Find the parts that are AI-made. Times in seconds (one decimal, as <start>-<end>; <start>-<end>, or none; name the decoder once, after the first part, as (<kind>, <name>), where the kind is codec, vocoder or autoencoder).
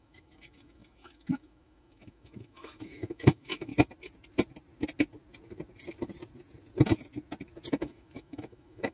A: 0.0-3.7 (autoencoder, DAC-VAE); 7.7-8.9